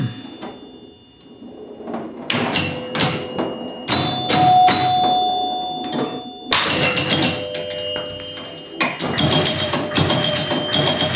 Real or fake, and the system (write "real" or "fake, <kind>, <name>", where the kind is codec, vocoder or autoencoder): real